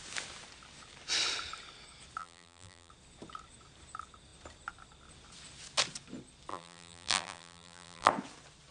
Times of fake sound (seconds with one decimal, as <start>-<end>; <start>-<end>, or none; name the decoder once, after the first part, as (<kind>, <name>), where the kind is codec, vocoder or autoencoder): 2.2-2.9 (vocoder, BigVGAN v2); 6.5-8.1